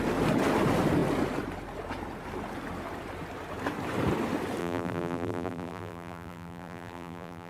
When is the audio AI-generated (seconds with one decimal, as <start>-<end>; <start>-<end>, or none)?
4.6-7.5